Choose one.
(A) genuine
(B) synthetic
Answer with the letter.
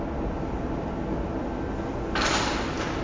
A